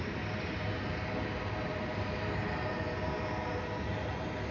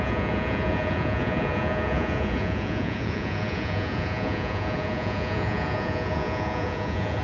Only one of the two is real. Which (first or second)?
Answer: first